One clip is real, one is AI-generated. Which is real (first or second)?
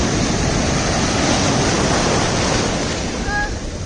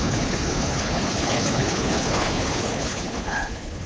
first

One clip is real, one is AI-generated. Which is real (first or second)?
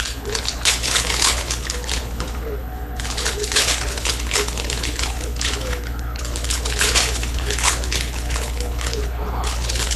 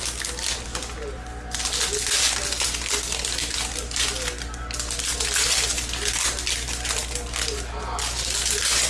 second